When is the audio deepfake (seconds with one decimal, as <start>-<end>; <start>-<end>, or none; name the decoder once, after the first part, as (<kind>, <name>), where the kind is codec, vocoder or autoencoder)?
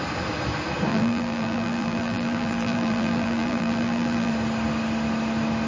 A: 0.9-4.3 (vocoder, BigVGAN v2)